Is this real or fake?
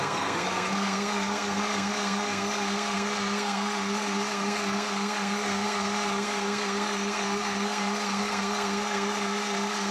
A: fake